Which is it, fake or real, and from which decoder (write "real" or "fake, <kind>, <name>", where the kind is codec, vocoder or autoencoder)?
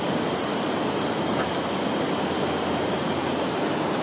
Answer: real